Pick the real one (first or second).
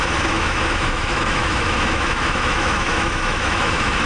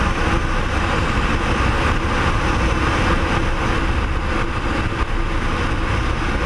second